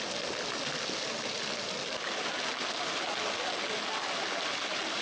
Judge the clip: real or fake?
real